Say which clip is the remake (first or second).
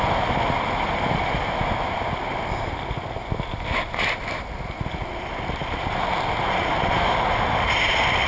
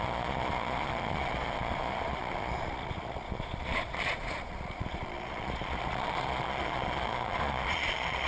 second